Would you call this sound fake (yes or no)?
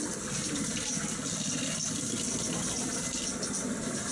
no